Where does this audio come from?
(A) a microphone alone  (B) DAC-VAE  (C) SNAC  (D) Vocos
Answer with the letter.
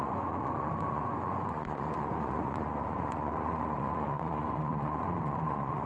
D